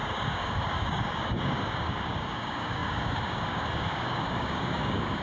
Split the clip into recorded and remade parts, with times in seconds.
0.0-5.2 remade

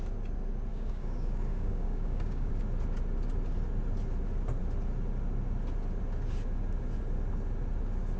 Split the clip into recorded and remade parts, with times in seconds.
0.0-0.7 recorded; 0.7-2.5 remade; 2.5-8.2 recorded

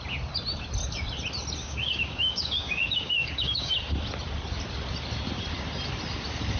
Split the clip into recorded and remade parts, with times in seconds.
0.0-1.6 recorded; 1.6-3.7 remade; 3.7-6.6 recorded

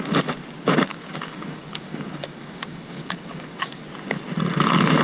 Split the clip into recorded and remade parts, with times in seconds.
0.0-0.9 recorded; 0.9-3.8 remade; 3.8-5.0 recorded

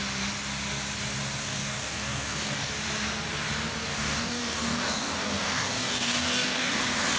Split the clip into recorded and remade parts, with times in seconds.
0.0-1.4 recorded; 1.4-2.7 remade; 2.7-3.9 recorded; 3.9-6.8 remade; 6.8-7.2 recorded

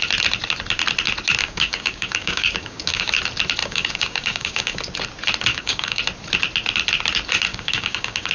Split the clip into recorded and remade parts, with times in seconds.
0.0-1.4 recorded; 1.4-3.2 remade; 3.2-3.6 recorded; 3.6-4.8 remade; 4.8-5.5 recorded; 5.5-6.0 remade; 6.0-7.5 recorded; 7.5-8.3 remade

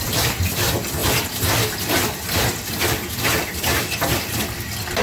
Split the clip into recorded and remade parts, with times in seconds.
0.0-5.0 recorded